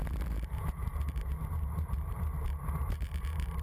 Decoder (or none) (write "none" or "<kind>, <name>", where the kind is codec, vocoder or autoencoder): vocoder, BigVGAN v2